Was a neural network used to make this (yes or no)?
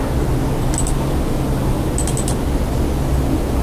no